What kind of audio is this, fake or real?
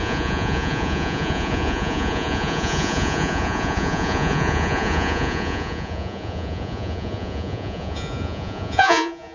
fake